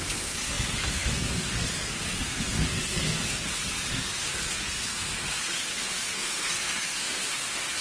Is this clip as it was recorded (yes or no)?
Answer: no